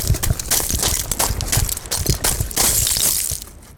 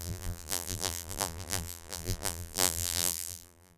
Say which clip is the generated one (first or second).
second